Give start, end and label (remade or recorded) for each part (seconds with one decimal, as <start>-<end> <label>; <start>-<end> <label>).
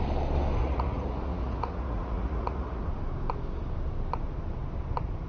0.0-0.6 recorded; 0.6-2.8 remade; 2.8-5.3 recorded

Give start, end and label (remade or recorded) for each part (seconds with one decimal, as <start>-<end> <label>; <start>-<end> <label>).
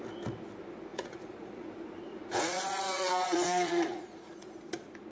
0.0-0.9 recorded; 0.9-1.7 remade; 1.7-2.1 recorded; 2.1-4.6 remade; 4.6-5.1 recorded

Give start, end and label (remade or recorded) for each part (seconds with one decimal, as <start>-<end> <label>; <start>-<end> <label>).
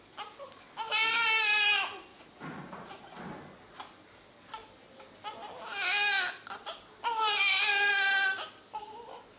0.0-2.1 recorded; 2.1-3.2 remade; 3.2-9.4 recorded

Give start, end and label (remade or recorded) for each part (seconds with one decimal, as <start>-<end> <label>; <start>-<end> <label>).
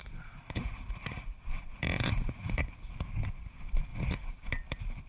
0.0-2.9 remade; 2.9-3.9 recorded; 3.9-4.5 remade; 4.5-5.1 recorded